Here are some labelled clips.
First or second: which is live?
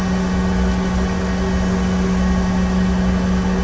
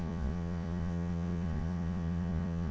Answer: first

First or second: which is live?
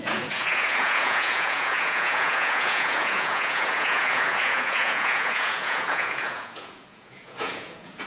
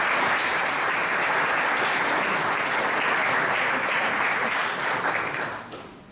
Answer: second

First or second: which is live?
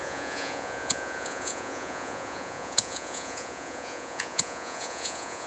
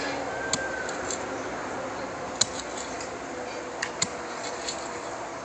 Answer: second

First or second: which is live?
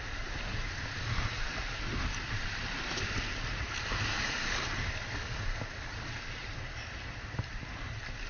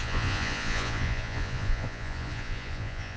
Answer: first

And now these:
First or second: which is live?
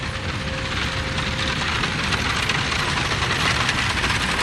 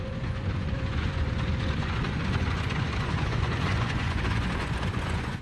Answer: first